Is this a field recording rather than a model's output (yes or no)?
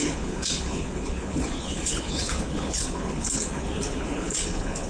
no